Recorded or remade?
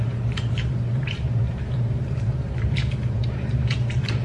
remade